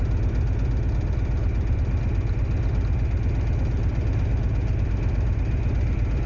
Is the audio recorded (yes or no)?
yes